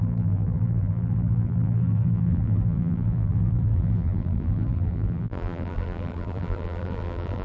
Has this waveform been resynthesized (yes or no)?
yes